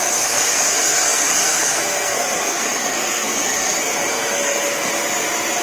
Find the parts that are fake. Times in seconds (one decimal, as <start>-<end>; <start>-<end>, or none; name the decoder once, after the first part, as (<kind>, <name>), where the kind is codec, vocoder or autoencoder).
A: 0.0-4.9 (codec, SNAC)